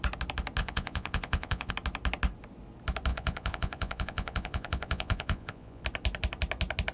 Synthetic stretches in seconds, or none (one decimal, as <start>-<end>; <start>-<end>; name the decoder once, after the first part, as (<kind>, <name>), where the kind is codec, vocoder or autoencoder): 0.6-1.7 (vocoder, Vocos); 3.1-5.8